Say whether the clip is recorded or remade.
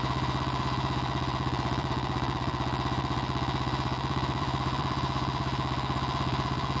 remade